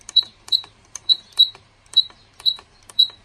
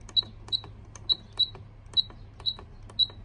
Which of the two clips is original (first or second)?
second